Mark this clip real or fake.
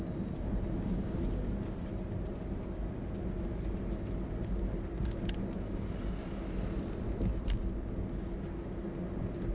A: real